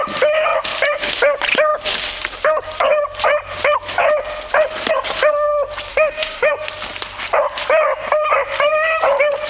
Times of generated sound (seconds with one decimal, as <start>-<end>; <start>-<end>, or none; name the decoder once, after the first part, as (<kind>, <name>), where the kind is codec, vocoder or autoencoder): 5.9-6.5 (autoencoder, DAC-VAE)

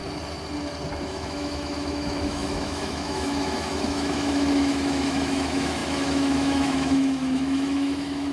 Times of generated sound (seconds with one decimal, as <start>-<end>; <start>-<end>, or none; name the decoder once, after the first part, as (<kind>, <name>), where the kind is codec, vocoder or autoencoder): 1.1-8.3 (autoencoder, DAC-VAE)

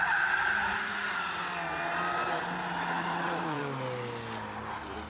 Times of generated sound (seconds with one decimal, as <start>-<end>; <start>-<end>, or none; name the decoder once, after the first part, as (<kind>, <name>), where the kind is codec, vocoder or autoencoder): 0.0-1.4 (vocoder, Vocos); 2.8-3.6